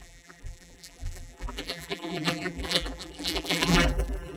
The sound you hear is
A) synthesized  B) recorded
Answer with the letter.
A